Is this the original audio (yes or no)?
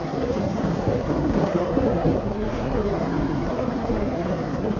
no